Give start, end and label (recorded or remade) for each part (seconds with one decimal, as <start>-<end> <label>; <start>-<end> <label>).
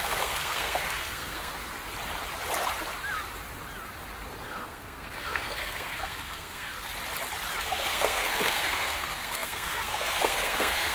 0.0-1.5 remade; 1.5-4.4 recorded; 4.4-6.9 remade; 6.9-7.6 recorded; 7.6-10.9 remade